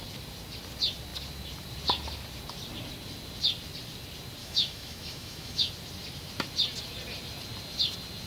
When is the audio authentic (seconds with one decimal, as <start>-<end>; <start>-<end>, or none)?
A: 0.0-4.4; 5.7-8.3